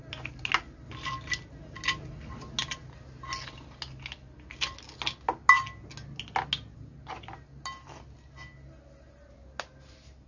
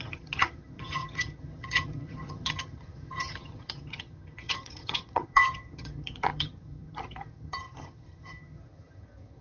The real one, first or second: first